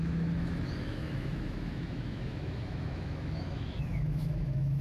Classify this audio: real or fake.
fake